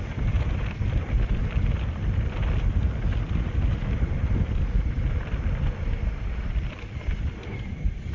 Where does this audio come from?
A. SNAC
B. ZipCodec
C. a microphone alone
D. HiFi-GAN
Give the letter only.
C